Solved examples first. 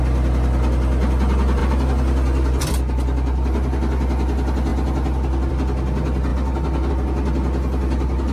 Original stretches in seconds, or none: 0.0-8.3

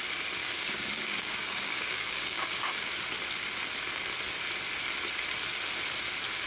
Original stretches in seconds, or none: 0.0-0.4; 2.9-6.5

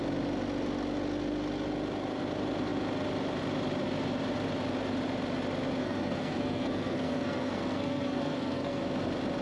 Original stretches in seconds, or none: 0.0-5.8; 8.8-9.4

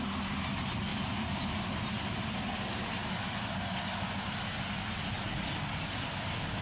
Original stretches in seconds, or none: 0.0-6.6